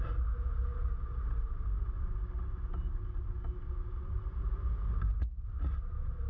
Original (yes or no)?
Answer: yes